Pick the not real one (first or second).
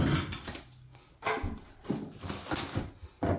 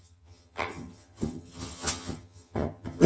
second